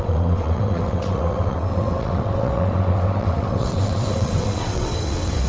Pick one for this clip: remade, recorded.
remade